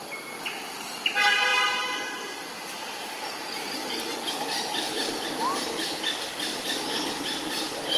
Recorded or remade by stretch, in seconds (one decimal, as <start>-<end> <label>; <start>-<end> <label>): 0.0-1.5 recorded; 1.5-3.6 remade; 3.6-6.5 recorded; 6.5-7.2 remade; 7.2-8.0 recorded